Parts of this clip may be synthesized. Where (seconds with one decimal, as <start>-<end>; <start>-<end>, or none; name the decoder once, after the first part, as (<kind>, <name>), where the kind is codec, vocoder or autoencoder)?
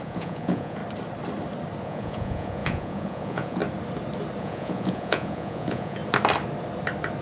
0.0-0.8 (vocoder, Vocos); 1.8-3.6; 4.4-6.0